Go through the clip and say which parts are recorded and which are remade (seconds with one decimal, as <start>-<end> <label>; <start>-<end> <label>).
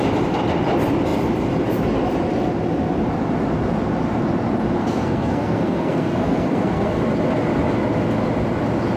0.0-4.8 recorded; 4.8-7.0 remade; 7.0-9.0 recorded